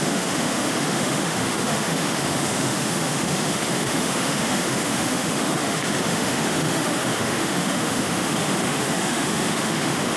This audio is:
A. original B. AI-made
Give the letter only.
B